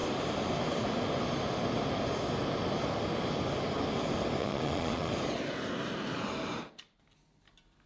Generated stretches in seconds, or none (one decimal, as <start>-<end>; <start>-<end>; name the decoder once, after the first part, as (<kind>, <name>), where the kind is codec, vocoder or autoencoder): 4.4-5.1 (vocoder, Vocos)